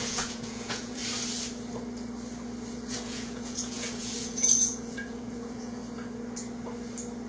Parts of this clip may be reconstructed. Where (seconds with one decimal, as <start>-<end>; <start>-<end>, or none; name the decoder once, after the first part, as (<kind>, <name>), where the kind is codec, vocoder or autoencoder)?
0.0-1.0 (vocoder, Vocos); 2.7-5.8